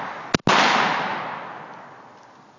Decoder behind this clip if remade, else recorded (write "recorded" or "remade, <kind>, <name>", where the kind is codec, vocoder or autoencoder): recorded